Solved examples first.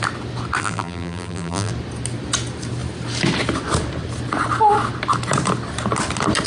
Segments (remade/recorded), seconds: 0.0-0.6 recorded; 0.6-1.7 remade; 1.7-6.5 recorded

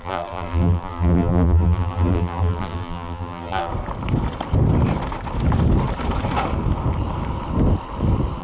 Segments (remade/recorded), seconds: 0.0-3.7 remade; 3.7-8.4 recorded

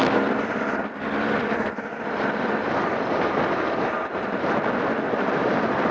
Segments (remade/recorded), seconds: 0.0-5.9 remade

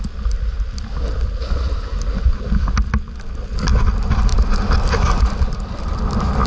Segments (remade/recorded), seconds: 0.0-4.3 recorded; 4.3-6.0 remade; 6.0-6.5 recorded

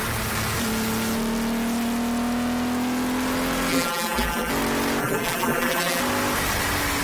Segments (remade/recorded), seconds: 0.0-3.7 recorded; 3.7-4.5 remade; 4.5-5.0 recorded; 5.0-6.0 remade; 6.0-7.0 recorded